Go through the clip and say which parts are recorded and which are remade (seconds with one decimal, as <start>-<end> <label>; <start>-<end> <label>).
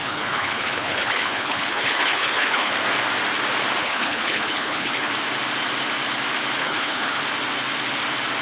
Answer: 0.0-2.7 remade; 2.7-3.8 recorded; 3.8-5.1 remade; 5.1-6.6 recorded; 6.6-7.2 remade; 7.2-8.4 recorded